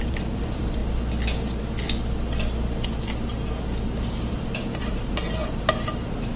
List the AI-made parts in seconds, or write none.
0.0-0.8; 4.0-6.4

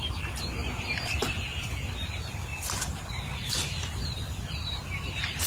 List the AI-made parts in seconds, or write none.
0.6-1.9; 3.9-4.4

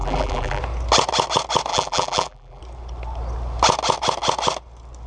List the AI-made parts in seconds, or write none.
0.0-0.6; 1.7-2.6

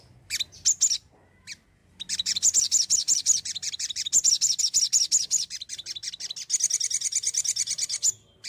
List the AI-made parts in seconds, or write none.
1.8-4.6

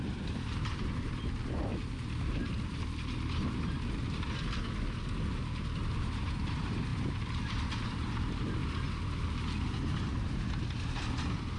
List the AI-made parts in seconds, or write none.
0.0-1.7; 5.8-8.6; 9.6-11.6

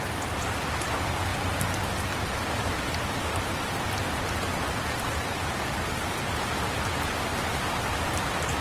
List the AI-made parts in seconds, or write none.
none

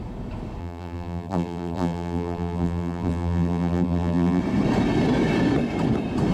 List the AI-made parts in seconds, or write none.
0.6-4.4

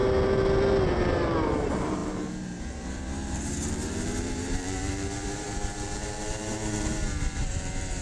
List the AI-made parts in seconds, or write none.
1.0-8.0